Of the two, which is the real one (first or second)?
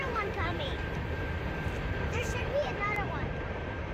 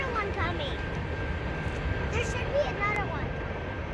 second